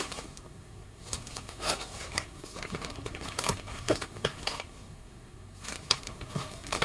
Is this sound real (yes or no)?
no